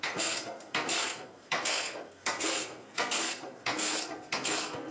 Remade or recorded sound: remade